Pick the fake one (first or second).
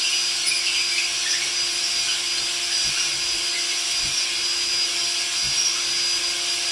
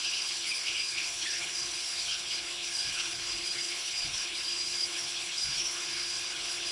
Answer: second